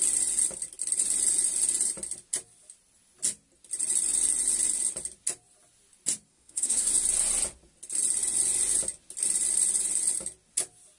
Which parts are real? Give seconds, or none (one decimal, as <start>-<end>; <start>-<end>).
0.0-6.3; 6.9-11.0